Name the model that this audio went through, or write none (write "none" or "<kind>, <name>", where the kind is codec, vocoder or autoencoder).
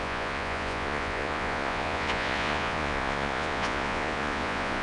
vocoder, Vocos